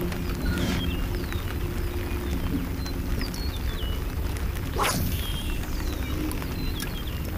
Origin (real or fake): real